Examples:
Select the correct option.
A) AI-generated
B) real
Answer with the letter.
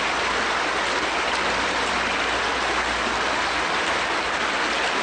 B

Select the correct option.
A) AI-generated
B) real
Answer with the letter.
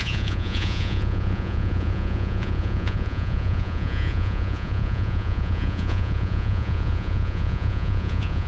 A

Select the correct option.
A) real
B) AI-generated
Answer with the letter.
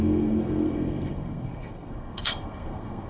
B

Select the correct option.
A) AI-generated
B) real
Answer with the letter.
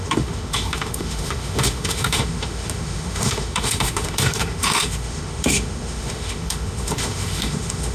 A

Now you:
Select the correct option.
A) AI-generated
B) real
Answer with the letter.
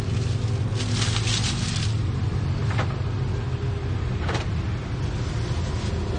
B